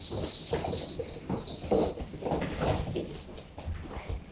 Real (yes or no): yes